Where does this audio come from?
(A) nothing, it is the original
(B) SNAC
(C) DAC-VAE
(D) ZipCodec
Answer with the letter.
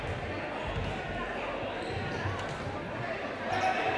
A